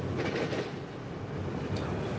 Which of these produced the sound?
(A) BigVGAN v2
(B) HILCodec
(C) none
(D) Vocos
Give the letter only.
C